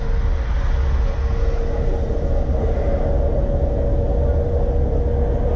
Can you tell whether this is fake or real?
real